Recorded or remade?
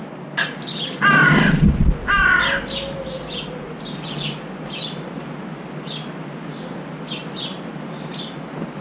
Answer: recorded